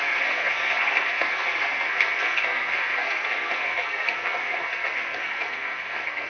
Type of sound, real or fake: fake